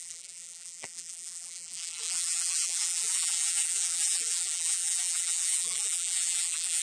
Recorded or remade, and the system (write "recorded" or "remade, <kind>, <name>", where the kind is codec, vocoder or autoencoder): remade, vocoder, BigVGAN v2